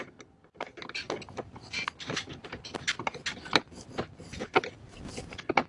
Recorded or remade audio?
recorded